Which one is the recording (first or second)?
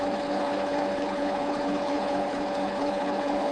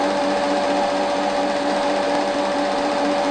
second